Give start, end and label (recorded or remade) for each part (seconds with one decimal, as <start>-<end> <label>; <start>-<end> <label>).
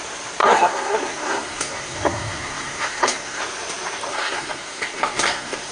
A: 0.0-0.4 recorded; 0.4-3.4 remade; 3.4-4.1 recorded; 4.1-5.7 remade